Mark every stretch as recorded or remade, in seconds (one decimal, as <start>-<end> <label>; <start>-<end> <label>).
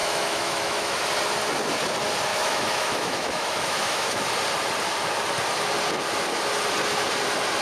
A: 0.0-0.9 remade; 0.9-2.3 recorded; 2.3-4.3 remade; 4.3-7.6 recorded